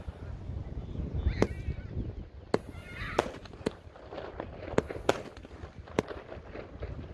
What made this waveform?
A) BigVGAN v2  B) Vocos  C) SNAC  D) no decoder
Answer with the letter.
D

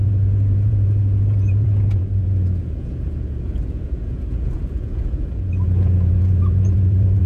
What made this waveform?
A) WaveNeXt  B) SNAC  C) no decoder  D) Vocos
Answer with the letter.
D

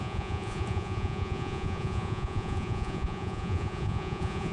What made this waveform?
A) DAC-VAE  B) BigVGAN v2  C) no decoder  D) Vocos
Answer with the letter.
D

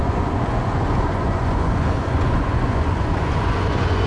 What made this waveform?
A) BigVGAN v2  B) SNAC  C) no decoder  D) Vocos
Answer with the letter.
D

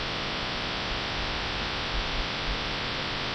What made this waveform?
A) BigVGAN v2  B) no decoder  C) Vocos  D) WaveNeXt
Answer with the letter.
B